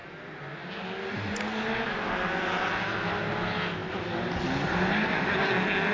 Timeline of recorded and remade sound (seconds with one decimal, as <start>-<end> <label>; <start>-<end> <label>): 0.0-5.9 recorded